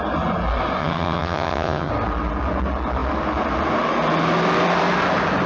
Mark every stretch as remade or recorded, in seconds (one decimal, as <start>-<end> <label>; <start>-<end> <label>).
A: 0.0-0.8 recorded; 0.8-1.9 remade; 1.9-5.5 recorded